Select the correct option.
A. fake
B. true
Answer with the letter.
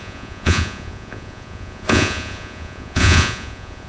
A